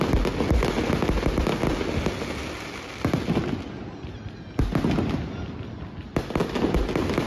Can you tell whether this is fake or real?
real